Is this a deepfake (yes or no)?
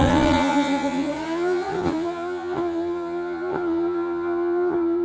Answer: yes